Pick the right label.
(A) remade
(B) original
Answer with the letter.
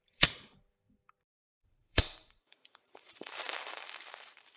A